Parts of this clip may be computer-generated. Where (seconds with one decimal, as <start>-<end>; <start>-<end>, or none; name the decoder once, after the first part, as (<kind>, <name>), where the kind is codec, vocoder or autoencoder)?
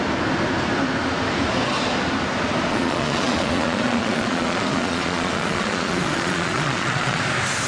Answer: 2.7-7.2 (vocoder, Vocos)